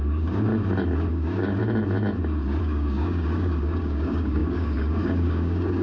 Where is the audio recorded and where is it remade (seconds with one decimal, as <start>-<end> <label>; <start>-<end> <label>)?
0.0-0.5 remade; 0.5-1.1 recorded; 1.1-1.6 remade; 1.6-2.6 recorded; 2.6-5.8 remade